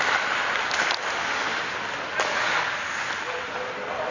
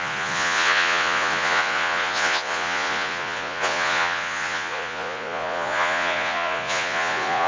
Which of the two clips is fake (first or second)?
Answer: second